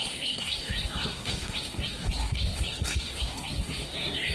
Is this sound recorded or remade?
remade